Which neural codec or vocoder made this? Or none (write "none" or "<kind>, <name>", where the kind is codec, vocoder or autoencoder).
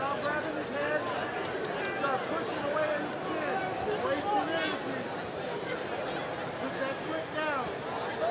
none